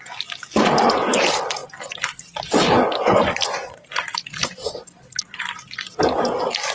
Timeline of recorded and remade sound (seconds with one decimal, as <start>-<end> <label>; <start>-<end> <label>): 0.0-6.7 recorded